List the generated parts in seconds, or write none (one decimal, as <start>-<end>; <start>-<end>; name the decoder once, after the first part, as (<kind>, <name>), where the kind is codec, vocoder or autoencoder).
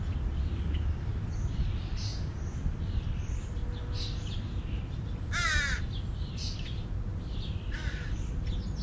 none